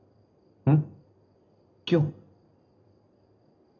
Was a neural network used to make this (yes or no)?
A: no